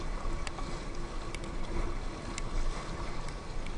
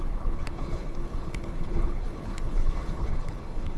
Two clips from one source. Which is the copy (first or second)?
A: second